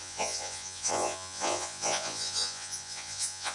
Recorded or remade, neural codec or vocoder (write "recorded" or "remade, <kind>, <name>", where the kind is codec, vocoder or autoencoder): remade, vocoder, Vocos